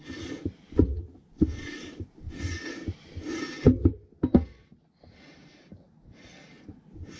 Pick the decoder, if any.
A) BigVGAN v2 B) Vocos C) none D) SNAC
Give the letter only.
C